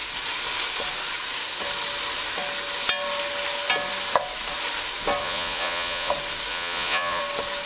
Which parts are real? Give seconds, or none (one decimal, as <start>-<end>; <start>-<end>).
0.0-5.2; 6.1-6.5; 7.2-7.7